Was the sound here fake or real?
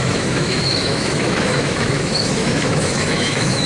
fake